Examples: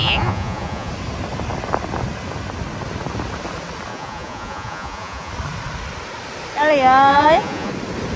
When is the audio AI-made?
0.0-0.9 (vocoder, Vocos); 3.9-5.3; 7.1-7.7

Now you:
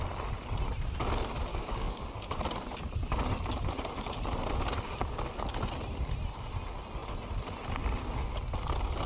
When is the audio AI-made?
1.5-2.4 (codec, DAC)

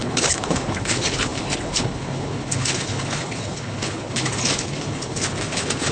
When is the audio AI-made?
0.0-5.9 (codec, HILCodec)